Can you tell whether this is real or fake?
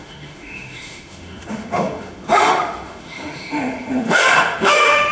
fake